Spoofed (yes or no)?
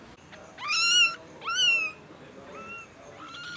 no